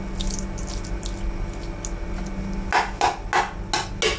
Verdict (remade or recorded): recorded